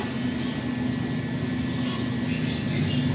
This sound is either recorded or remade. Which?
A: recorded